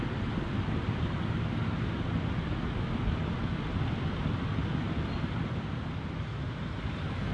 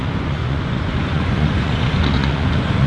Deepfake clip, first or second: second